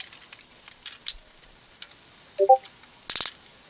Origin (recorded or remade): recorded